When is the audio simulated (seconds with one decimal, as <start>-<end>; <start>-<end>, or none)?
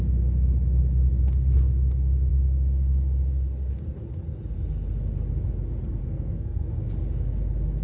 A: 6.0-6.7